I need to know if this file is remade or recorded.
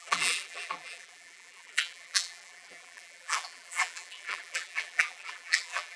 remade